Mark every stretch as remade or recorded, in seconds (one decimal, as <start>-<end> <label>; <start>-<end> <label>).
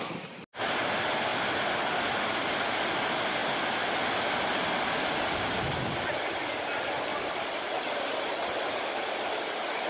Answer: 0.0-1.3 recorded; 1.3-2.2 remade; 2.2-3.4 recorded; 3.4-6.5 remade; 6.5-7.1 recorded; 7.1-7.8 remade; 7.8-9.9 recorded